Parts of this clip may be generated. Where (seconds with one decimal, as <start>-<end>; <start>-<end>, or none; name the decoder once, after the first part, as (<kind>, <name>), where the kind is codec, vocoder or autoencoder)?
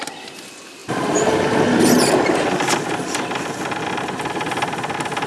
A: 0.8-1.6 (vocoder, BigVGAN v2)